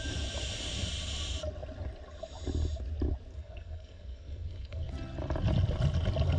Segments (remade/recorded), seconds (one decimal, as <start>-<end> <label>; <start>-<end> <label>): 0.0-3.3 recorded; 3.3-4.9 remade; 4.9-6.4 recorded